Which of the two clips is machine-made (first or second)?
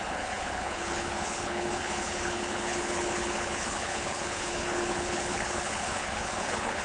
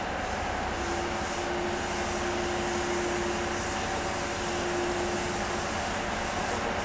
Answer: first